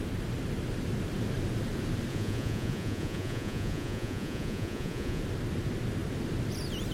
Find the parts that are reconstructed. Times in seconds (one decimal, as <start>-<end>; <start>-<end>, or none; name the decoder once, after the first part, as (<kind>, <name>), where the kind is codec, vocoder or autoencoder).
2.1-5.2 (vocoder, Vocos)